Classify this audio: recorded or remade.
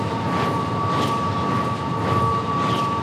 recorded